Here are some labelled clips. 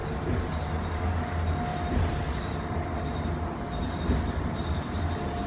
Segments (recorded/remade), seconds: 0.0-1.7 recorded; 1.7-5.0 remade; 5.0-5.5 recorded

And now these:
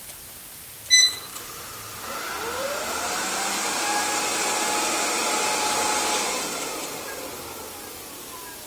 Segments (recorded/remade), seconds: 0.0-4.3 remade; 4.3-6.4 recorded; 6.4-8.7 remade

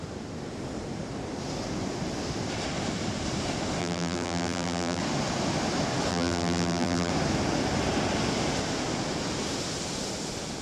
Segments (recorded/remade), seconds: 0.0-3.8 recorded; 3.8-5.0 remade; 5.0-6.1 recorded; 6.1-7.1 remade; 7.1-10.6 recorded

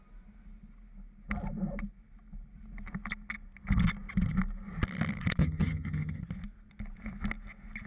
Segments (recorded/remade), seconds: 0.0-5.4 recorded; 5.4-6.2 remade; 6.2-7.9 recorded

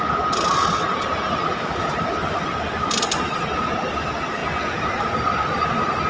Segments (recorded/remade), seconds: 0.0-6.1 recorded